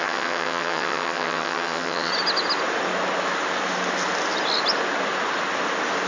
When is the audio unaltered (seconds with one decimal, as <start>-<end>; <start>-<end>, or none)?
2.1-6.1